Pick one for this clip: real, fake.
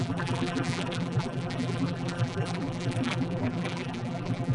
fake